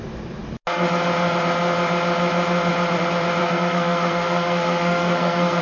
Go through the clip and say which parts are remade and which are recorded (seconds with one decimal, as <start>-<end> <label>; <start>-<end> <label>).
0.0-3.4 recorded; 3.4-5.6 remade